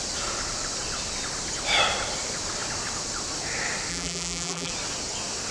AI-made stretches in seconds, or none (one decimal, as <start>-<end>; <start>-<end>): 3.9-4.7